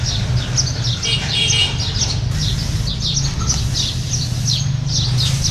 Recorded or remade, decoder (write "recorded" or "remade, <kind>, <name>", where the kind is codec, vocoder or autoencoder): recorded